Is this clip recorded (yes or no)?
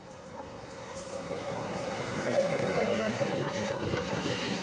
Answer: no